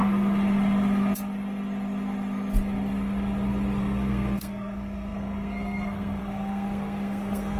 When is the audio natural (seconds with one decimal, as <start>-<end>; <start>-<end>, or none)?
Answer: 0.0-3.8